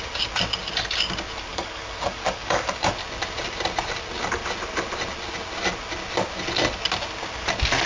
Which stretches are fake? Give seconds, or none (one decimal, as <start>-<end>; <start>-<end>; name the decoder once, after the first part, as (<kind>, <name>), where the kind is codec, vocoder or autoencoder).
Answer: 1.5-2.9 (codec, DAC)